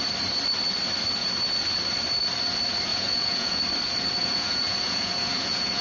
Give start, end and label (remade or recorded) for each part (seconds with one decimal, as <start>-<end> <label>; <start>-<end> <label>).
0.0-2.9 recorded; 2.9-3.6 remade; 3.6-4.2 recorded; 4.2-5.8 remade

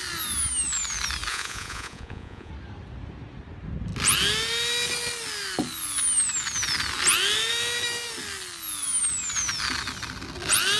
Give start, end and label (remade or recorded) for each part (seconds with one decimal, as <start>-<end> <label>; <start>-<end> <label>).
0.0-1.3 recorded; 1.3-2.5 remade; 2.5-10.8 recorded

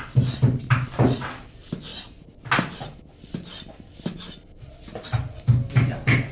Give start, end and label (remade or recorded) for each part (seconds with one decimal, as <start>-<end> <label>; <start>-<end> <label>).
0.0-6.3 recorded

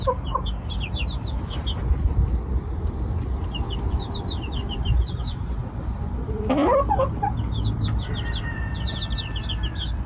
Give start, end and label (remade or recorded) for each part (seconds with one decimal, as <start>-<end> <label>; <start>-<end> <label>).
0.0-10.1 recorded

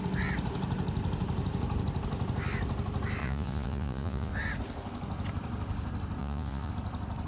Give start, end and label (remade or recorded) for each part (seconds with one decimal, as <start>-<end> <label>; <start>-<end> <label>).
0.0-3.2 recorded; 3.2-4.3 remade; 4.3-6.2 recorded; 6.2-6.7 remade; 6.7-7.3 recorded

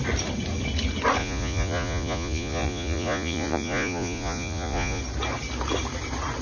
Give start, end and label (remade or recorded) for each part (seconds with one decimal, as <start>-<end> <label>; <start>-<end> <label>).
0.0-1.2 recorded; 1.2-5.0 remade; 5.0-6.4 recorded